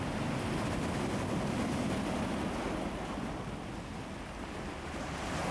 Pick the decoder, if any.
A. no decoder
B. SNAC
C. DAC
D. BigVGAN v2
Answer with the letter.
A